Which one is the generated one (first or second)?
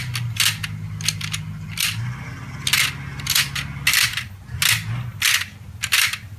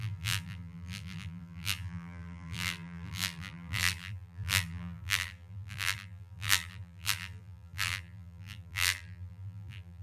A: second